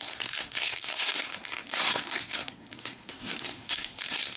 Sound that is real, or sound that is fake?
fake